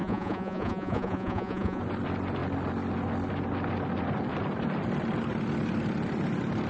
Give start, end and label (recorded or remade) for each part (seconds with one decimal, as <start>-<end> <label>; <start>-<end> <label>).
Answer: 0.0-1.8 remade; 1.8-6.7 recorded